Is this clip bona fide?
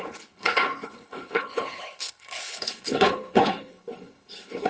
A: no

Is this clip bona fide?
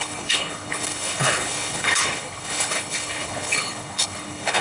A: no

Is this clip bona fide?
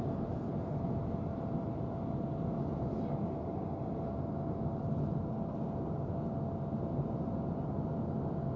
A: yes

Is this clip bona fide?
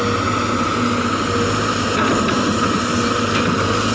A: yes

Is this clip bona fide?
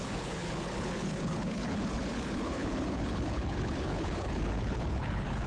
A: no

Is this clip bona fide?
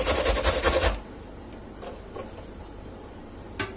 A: yes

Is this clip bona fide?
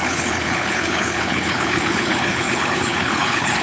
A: no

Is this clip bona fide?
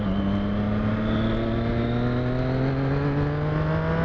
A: yes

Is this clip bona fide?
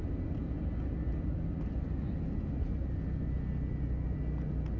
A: yes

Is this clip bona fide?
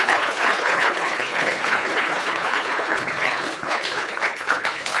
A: no